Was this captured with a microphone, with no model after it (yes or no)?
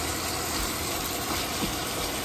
yes